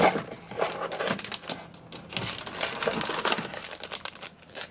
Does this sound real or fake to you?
real